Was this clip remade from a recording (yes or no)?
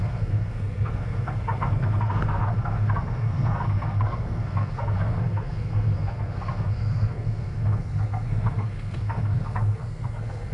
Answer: yes